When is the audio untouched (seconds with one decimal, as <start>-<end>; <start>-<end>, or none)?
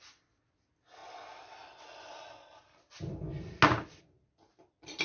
0.0-5.0